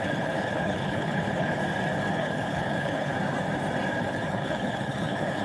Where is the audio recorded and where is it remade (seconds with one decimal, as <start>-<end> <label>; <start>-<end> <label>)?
0.0-1.6 remade; 1.6-2.1 recorded; 2.1-3.1 remade; 3.1-4.0 recorded; 4.0-5.4 remade